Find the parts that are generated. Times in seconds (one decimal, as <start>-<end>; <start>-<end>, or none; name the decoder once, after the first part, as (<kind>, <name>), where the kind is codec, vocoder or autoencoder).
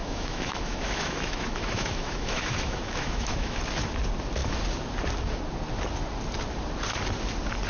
0.0-3.6 (autoencoder, DAC-VAE)